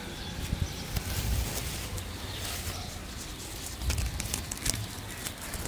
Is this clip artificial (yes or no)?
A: no